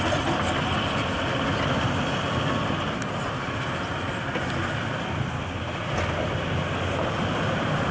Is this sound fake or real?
real